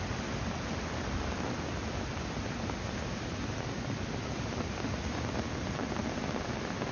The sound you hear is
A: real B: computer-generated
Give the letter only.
A